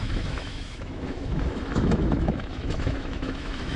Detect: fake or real fake